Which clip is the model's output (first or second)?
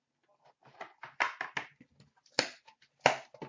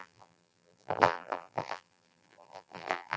second